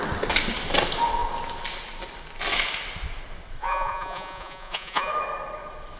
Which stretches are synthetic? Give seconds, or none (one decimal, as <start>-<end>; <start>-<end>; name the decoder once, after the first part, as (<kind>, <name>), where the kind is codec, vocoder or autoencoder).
3.6-5.1 (vocoder, Vocos)